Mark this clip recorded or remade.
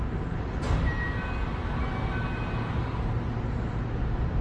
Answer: recorded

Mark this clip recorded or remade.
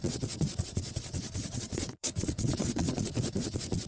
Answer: remade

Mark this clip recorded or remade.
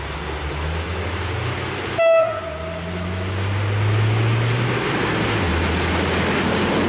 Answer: recorded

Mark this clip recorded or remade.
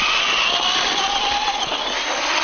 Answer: recorded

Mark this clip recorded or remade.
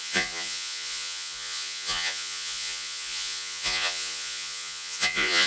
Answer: remade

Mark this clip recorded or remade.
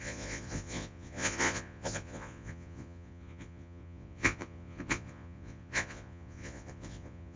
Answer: remade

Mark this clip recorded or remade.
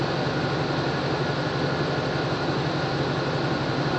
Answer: recorded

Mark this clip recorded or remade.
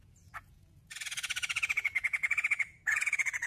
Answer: remade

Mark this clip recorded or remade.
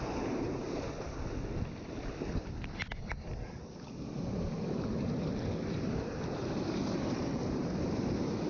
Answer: recorded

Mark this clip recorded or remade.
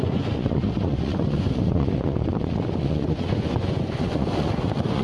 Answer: remade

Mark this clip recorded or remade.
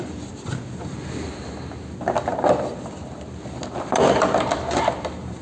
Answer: recorded